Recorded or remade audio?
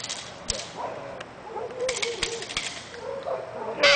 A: recorded